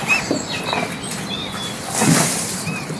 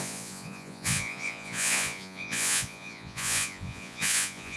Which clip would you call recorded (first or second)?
first